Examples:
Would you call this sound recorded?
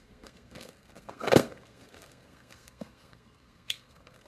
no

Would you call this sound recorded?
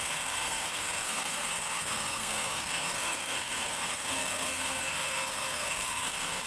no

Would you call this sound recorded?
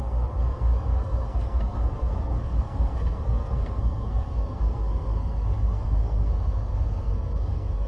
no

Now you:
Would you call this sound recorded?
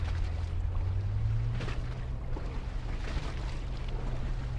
yes